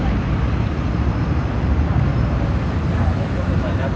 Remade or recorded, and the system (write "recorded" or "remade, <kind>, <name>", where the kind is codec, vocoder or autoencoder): remade, vocoder, BigVGAN v2